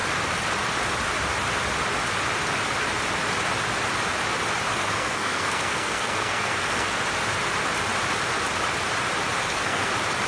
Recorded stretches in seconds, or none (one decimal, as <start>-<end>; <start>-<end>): 0.0-4.7; 7.0-9.4; 9.9-10.3